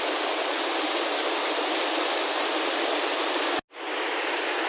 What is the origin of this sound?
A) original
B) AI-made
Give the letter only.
A